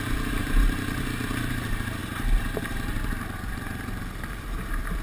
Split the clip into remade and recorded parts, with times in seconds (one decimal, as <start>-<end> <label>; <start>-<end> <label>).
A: 0.0-5.0 remade